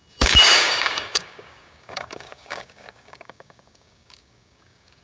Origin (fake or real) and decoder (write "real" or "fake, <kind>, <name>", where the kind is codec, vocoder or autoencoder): fake, codec, DAC